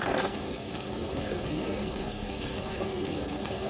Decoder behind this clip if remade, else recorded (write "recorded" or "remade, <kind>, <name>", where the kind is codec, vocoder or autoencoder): remade, codec, SNAC